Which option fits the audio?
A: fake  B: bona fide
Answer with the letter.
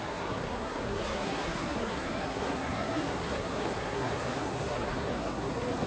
A